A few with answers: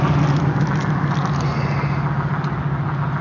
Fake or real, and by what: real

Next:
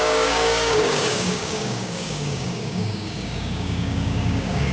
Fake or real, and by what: fake, codec, DAC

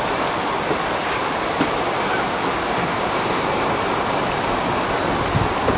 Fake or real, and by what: real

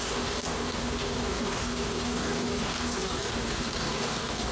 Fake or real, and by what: fake, codec, DAC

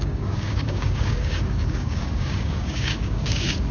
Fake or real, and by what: fake, codec, DAC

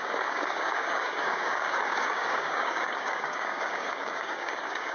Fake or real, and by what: fake, codec, DAC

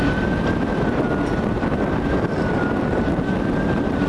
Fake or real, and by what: real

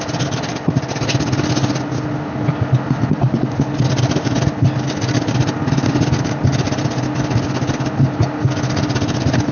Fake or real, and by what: real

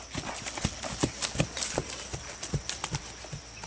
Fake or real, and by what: real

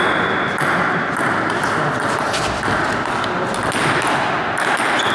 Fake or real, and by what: real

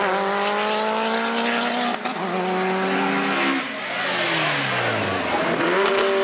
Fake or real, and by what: real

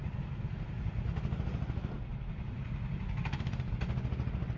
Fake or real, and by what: real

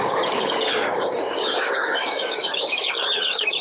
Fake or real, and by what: fake, codec, DAC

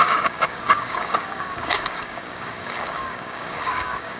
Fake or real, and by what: fake, codec, DAC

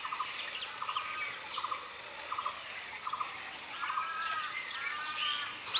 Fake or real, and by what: real